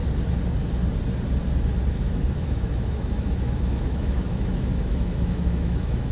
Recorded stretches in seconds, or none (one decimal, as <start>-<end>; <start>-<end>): 0.0-2.4